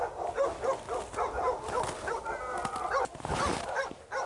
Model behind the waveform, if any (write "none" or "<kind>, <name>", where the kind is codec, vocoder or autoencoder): none